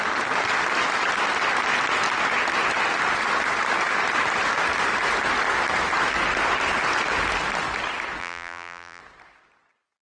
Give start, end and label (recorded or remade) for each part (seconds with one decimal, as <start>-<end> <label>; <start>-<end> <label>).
0.0-8.2 recorded; 8.2-9.0 remade; 9.0-10.1 recorded